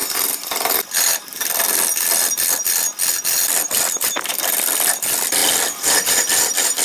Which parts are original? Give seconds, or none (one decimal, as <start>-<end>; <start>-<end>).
0.0-5.4